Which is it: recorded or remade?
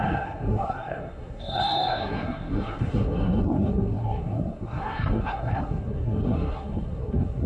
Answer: remade